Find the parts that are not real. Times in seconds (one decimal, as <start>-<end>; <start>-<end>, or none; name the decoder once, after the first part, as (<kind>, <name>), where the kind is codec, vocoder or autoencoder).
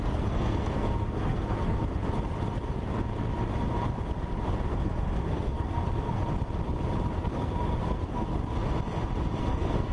0.0-1.8 (codec, SNAC); 4.7-6.2; 7.1-8.3; 9.4-9.9